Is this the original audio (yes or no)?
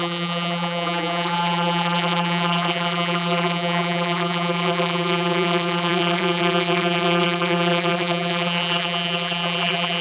no